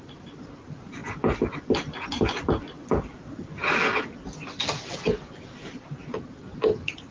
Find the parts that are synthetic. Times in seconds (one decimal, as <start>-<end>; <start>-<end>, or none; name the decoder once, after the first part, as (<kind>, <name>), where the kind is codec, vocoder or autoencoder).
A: none